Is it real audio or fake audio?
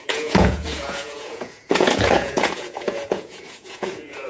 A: fake